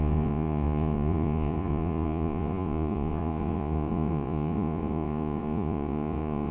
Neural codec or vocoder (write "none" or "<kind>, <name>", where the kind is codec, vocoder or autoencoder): vocoder, Vocos